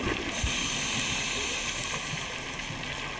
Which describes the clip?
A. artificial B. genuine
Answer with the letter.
B